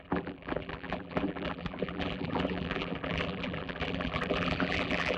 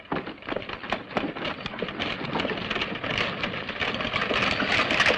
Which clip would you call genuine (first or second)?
second